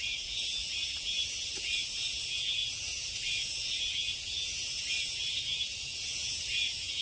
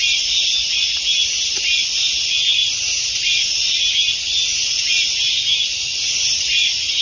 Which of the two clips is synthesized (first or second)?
first